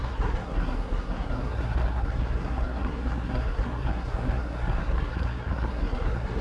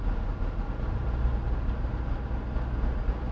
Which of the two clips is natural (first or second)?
second